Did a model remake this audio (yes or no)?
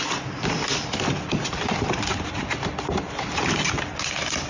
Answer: no